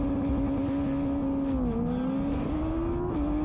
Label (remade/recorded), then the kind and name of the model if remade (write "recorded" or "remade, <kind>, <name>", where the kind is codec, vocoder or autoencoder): recorded